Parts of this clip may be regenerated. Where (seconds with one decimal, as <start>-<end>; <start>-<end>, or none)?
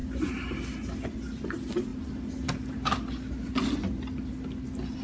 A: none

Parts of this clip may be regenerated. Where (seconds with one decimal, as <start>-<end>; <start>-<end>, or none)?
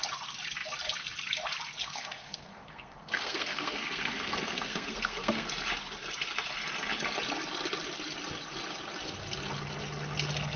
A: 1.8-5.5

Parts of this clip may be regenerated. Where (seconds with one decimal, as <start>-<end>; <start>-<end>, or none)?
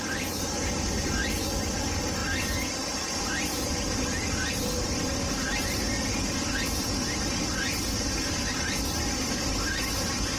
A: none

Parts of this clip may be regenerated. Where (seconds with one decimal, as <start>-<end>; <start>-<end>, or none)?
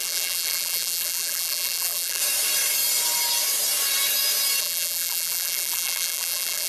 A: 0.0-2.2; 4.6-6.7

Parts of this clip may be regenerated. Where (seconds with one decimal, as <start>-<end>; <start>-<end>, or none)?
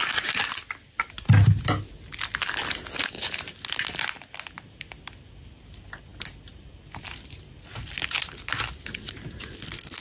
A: none